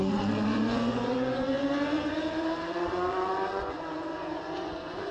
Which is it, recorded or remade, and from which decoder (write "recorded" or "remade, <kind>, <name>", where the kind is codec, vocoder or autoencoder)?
remade, vocoder, Vocos